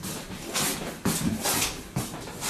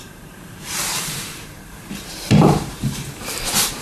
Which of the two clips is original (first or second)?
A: first